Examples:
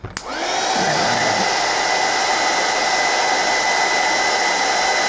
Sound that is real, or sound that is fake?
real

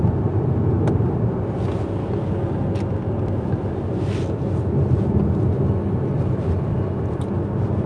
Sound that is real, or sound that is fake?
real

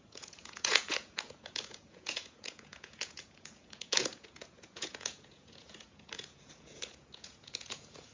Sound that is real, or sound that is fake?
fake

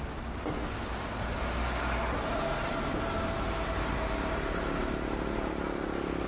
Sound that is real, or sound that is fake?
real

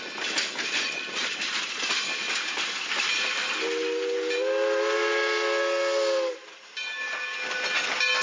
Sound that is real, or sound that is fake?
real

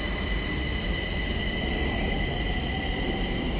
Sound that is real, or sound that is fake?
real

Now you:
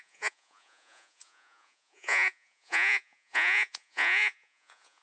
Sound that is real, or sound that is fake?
fake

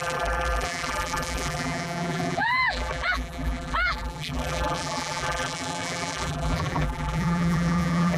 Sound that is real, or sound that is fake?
fake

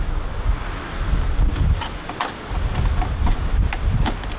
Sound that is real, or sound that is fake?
real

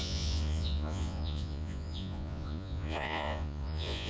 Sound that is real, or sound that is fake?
fake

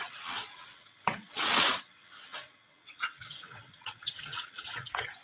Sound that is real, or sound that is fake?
fake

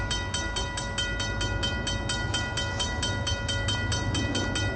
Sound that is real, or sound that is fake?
real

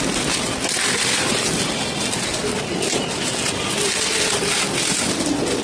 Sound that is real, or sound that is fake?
real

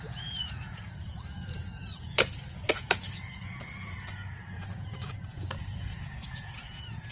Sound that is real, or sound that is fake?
fake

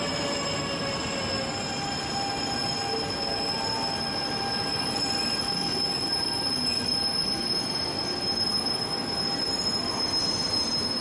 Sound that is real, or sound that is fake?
real